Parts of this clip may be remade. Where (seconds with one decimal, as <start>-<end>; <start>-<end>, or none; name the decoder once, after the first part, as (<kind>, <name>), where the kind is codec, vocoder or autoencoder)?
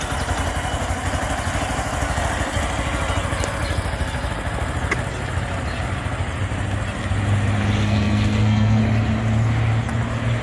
7.8-8.8 (codec, SNAC)